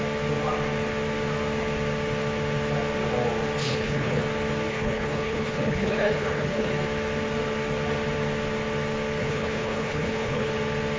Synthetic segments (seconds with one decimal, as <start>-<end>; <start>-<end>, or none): 3.6-4.2; 4.7-6.7; 9.2-10.5